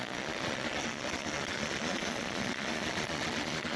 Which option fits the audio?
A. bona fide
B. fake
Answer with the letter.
B